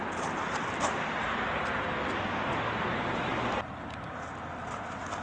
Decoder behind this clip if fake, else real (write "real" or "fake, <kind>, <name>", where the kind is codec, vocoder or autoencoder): real